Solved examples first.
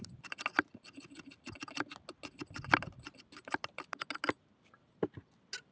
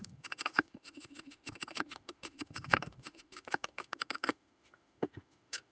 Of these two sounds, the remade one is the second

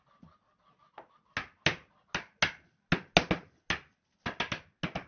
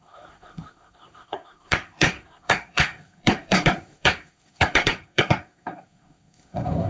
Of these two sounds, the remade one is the second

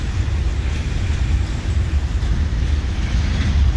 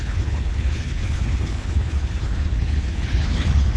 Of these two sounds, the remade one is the second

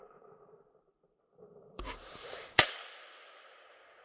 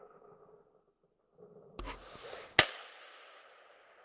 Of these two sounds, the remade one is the first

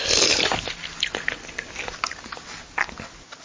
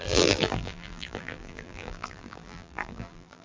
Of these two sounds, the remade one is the second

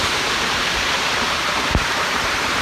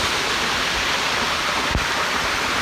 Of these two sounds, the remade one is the first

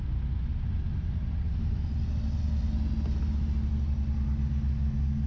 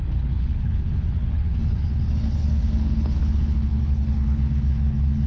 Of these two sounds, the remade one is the second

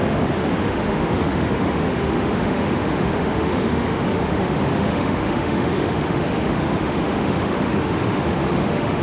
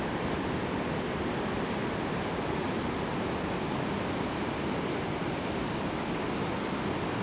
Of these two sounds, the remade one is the first